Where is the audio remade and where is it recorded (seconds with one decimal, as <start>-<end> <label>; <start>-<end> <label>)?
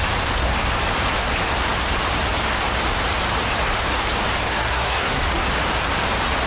0.0-4.5 recorded; 4.5-5.2 remade; 5.2-6.5 recorded